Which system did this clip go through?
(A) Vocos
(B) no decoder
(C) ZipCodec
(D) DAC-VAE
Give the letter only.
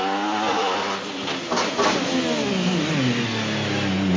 B